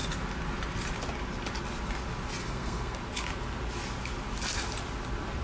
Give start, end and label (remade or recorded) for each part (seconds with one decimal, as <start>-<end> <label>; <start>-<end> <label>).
0.0-2.4 recorded; 2.4-3.0 remade; 3.0-5.4 recorded